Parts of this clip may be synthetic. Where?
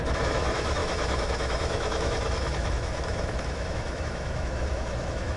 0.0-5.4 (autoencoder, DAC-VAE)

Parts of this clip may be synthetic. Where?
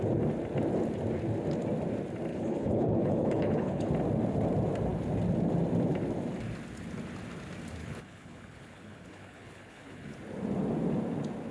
2.3-3.9 (codec, HILCodec); 7.8-10.2